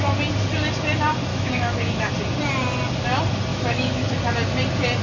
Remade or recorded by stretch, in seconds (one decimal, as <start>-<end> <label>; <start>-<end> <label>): 0.0-1.3 recorded; 1.3-2.1 remade; 2.1-3.5 recorded; 3.5-4.1 remade; 4.1-5.0 recorded